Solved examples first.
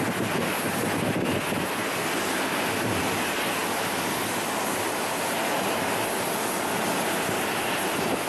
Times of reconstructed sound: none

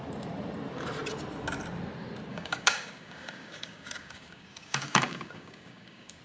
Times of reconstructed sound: 2.3-6.2 (codec, DAC)

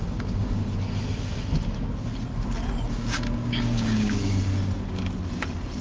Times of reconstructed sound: 0.0-0.6 (codec, DAC); 2.9-4.5

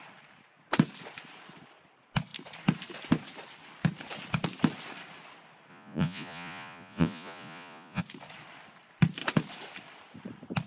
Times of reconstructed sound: 5.7-8.0 (vocoder, Vocos)